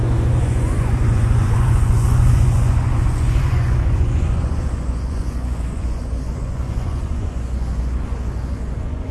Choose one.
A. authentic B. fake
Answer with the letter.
B